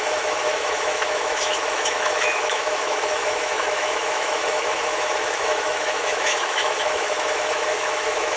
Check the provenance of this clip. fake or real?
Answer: fake